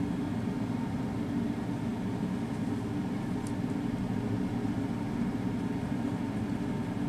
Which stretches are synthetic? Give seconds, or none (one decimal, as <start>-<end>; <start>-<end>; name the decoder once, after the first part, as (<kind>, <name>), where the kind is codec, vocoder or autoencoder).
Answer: none